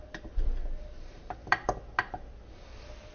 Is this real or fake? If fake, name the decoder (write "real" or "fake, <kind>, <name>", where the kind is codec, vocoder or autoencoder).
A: real